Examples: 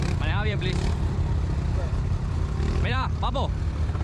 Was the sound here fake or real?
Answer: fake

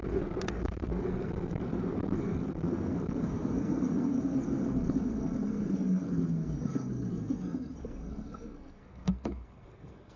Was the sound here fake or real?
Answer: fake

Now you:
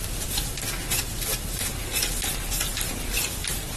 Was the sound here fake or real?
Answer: real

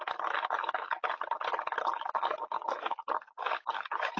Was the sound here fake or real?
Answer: real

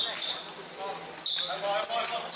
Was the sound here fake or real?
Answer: real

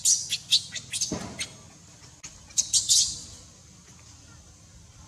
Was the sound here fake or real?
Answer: real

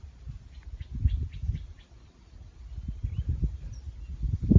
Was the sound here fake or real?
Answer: real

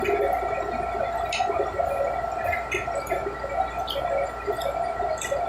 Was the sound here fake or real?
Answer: real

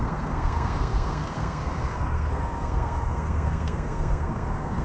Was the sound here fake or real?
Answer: fake